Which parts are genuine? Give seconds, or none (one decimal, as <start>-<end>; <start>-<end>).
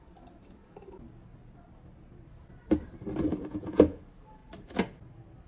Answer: 0.0-3.3; 4.0-5.5